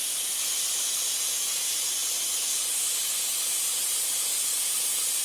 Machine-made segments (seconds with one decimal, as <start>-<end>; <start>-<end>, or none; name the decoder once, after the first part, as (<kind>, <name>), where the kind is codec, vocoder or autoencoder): none